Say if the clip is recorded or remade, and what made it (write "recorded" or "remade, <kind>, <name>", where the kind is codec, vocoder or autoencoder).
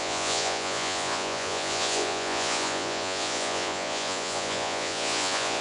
remade, vocoder, Vocos